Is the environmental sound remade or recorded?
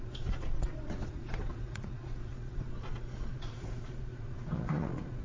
remade